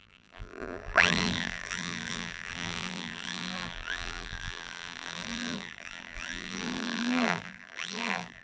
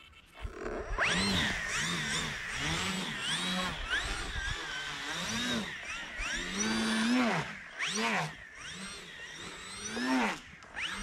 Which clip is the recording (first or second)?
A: second